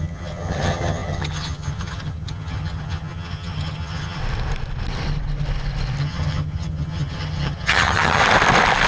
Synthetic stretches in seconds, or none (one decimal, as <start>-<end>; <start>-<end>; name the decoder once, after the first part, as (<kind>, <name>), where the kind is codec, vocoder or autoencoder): 0.0-4.2 (vocoder, HiFi-GAN); 6.0-8.2